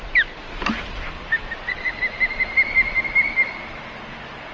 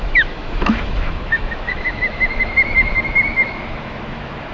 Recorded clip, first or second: first